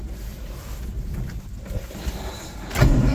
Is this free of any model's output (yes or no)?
yes